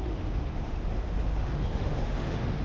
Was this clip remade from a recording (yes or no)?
yes